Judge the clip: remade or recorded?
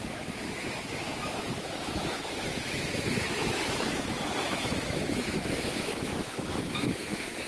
remade